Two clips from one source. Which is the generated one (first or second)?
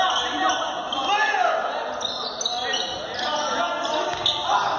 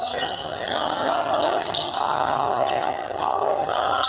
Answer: second